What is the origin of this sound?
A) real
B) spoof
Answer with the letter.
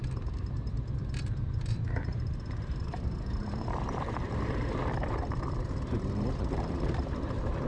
B